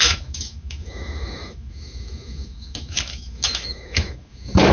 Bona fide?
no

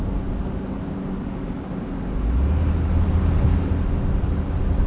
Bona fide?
yes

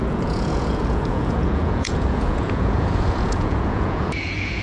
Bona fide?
no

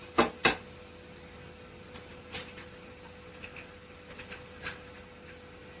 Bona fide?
yes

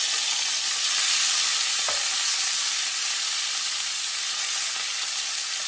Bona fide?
yes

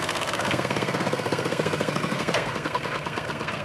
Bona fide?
no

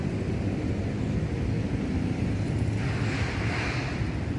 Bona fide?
yes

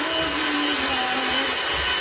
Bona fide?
yes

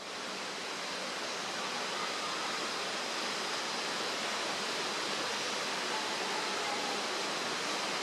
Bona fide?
yes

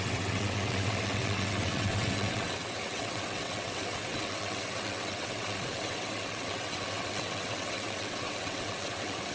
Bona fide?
no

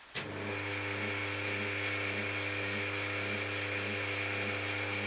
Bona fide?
yes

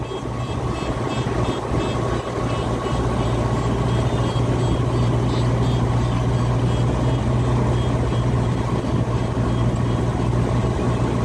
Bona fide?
yes